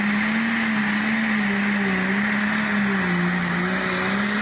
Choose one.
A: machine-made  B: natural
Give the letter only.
B